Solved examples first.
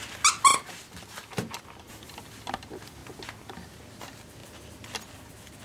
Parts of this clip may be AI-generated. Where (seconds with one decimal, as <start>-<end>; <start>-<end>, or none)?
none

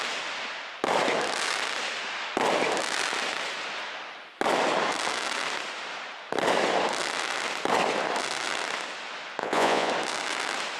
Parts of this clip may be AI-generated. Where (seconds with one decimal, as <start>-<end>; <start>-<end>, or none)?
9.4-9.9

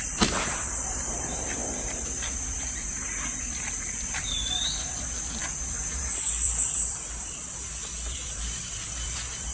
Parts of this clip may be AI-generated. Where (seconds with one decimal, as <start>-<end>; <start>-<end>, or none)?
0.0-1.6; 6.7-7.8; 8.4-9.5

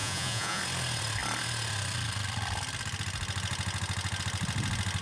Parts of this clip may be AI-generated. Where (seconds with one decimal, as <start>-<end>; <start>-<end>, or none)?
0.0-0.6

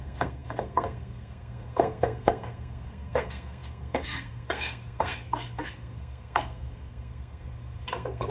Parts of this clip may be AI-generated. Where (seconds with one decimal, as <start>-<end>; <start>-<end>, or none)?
0.0-8.3